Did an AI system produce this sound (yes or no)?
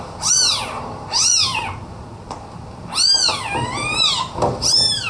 no